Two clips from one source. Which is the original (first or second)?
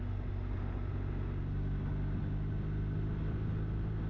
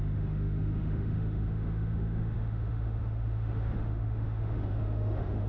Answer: first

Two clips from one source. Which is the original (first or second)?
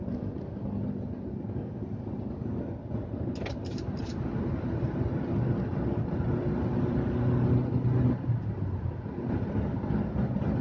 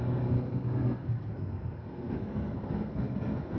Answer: first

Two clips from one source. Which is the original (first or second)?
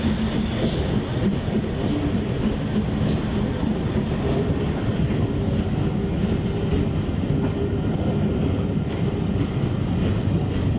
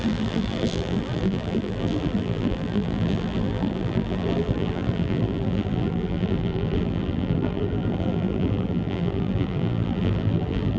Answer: first